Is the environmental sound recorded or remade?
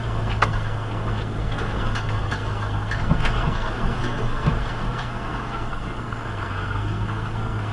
remade